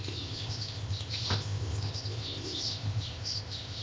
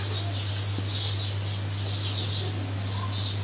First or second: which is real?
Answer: second